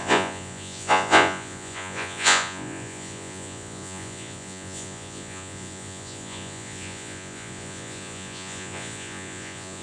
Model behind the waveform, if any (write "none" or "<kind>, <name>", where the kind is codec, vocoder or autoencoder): vocoder, Vocos